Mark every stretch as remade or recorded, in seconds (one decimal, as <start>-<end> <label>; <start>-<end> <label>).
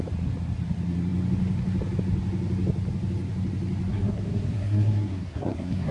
0.0-3.9 recorded; 3.9-5.9 remade